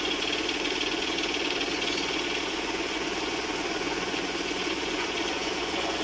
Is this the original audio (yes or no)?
no